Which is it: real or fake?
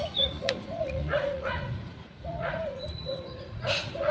fake